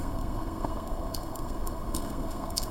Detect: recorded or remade remade